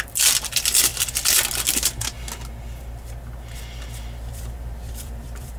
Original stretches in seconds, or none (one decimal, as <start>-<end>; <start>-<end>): 0.9-4.3